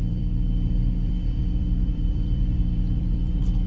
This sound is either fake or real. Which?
fake